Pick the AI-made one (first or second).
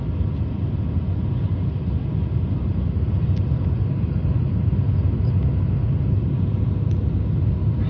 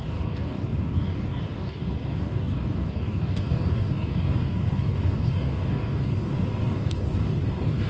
second